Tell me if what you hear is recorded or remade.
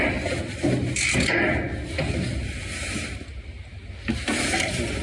recorded